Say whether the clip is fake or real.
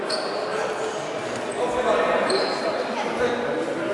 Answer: real